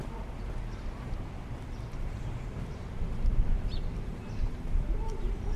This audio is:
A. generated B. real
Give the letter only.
A